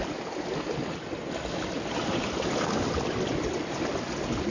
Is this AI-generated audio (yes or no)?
no